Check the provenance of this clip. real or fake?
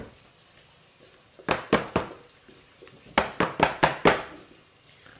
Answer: real